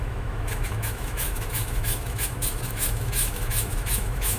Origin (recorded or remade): remade